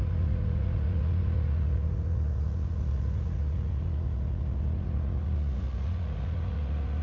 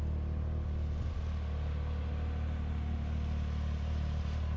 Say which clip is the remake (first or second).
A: first